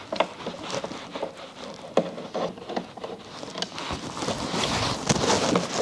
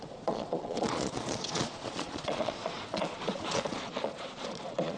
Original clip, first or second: first